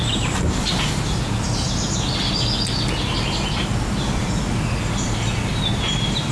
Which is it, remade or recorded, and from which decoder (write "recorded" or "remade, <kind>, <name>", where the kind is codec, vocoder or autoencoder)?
recorded